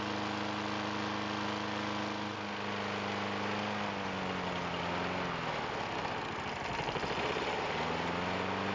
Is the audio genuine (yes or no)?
yes